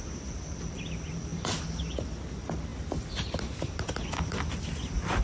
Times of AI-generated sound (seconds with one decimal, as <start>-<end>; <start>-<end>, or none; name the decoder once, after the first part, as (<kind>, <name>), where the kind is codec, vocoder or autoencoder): none